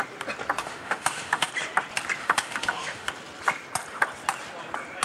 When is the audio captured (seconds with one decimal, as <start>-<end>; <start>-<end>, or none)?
0.0-0.6; 1.5-2.2; 3.1-5.0